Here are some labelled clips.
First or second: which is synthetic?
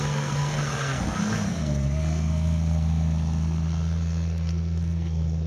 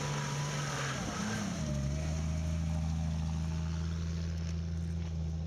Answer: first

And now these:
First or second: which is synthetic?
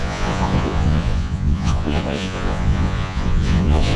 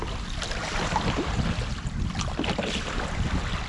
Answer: first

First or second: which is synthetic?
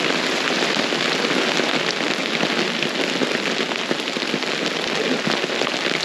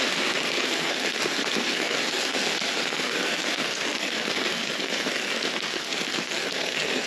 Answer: second